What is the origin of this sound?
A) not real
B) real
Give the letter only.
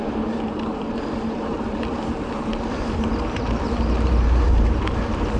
A